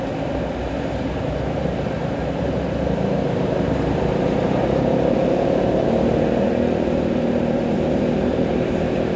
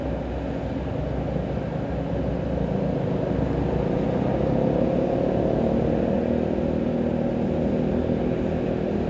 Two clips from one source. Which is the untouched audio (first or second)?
second